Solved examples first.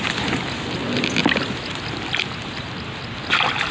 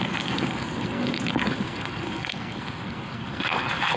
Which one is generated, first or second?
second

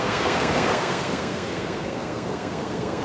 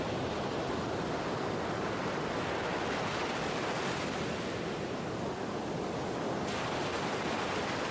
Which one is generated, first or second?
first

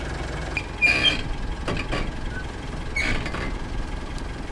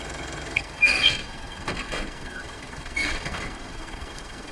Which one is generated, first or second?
second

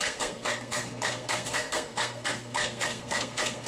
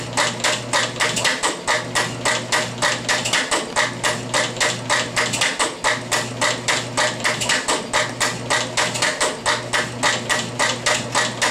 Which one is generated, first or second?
first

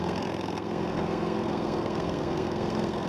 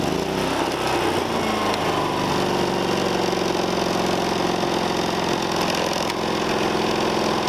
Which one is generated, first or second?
first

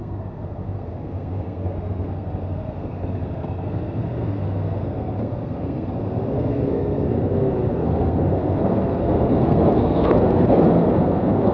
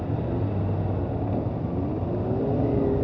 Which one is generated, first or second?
first